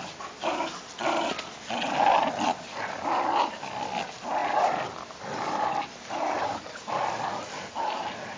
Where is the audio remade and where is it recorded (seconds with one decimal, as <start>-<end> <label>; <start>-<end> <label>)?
0.0-8.4 recorded